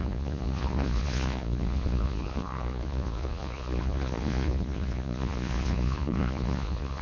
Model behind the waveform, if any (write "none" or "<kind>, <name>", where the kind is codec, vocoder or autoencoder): vocoder, Vocos